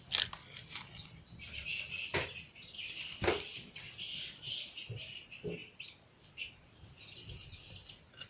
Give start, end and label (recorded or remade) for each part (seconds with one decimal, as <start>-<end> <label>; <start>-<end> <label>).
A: 0.0-2.1 recorded; 2.1-4.8 remade; 4.8-5.6 recorded; 5.6-7.0 remade; 7.0-8.3 recorded